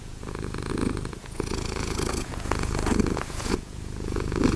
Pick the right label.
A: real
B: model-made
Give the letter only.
B